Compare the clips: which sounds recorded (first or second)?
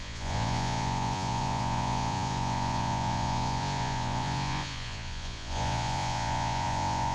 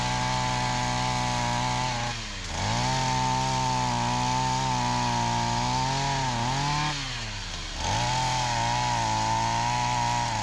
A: second